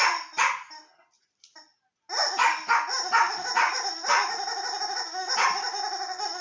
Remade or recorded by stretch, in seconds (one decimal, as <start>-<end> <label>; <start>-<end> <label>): 0.0-6.4 recorded